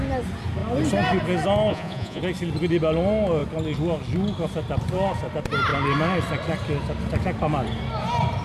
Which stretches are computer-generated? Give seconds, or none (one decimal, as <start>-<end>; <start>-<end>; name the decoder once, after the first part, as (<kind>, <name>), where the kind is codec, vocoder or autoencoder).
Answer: 1.7-2.2 (vocoder, Vocos)